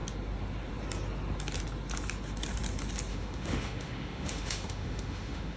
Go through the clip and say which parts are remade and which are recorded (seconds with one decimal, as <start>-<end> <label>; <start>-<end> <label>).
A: 0.0-3.1 recorded; 3.1-5.6 remade

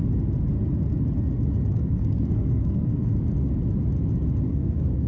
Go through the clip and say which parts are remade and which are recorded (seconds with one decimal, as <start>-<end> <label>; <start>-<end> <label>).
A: 0.0-1.7 recorded; 1.7-3.1 remade; 3.1-4.5 recorded; 4.5-5.1 remade

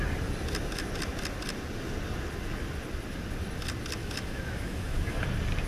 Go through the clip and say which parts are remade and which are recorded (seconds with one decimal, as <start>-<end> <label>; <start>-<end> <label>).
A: 0.0-4.0 recorded; 4.0-5.2 remade; 5.2-5.7 recorded

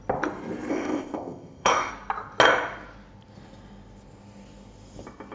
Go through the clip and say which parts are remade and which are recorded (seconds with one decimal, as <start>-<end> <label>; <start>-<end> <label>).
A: 0.0-0.7 recorded; 0.7-1.9 remade; 1.9-5.3 recorded

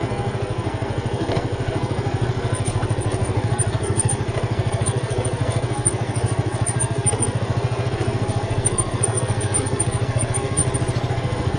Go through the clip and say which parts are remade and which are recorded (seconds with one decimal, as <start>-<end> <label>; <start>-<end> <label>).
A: 0.0-10.6 remade; 10.6-11.1 recorded; 11.1-11.6 remade

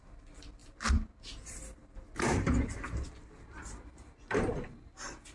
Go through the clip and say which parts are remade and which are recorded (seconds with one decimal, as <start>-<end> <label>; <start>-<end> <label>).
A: 0.0-5.3 recorded

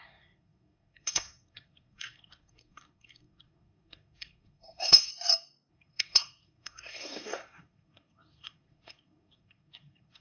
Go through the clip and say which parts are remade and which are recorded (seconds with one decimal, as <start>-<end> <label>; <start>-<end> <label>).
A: 0.0-5.1 remade; 5.1-5.7 recorded; 5.7-10.2 remade